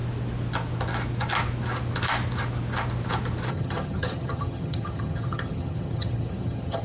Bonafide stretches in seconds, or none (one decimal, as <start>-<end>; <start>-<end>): 0.0-3.5